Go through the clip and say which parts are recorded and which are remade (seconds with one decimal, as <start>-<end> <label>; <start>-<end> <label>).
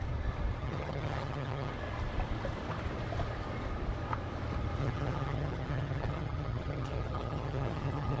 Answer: 0.0-0.6 recorded; 0.6-1.7 remade; 1.7-4.8 recorded; 4.8-8.2 remade